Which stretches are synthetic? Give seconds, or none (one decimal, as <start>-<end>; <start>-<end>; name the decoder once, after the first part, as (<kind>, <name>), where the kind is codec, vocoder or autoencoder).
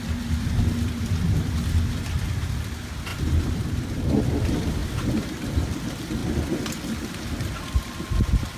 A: 0.0-6.2 (vocoder, BigVGAN v2); 7.8-8.6